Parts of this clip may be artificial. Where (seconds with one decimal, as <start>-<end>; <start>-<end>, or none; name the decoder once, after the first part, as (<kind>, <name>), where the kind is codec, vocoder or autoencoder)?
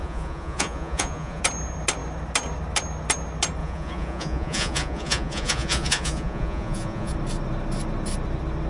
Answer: 0.0-1.4 (vocoder, Vocos); 3.6-7.1